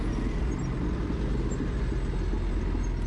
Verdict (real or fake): real